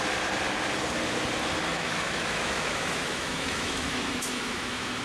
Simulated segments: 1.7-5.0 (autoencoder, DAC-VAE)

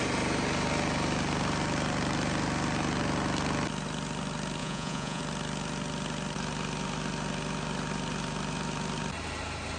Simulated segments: 4.6-5.2 (vocoder, Vocos)

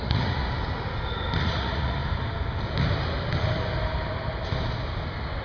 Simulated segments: 0.0-0.4 (vocoder, Vocos); 1.4-2.0